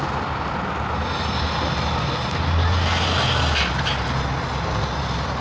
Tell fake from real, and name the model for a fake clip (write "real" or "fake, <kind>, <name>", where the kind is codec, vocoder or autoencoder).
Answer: real